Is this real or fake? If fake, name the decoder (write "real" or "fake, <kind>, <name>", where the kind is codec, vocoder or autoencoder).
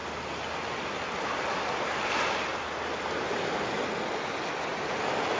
real